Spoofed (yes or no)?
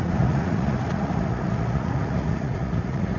yes